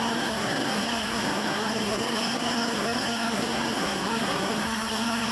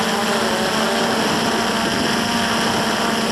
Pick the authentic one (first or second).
second